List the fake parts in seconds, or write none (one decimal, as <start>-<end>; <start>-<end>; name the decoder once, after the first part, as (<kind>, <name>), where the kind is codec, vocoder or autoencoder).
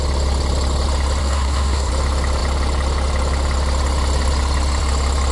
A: 1.2-1.9 (codec, SNAC)